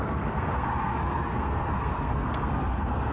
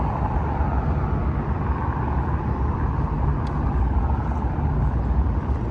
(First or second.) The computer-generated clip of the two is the first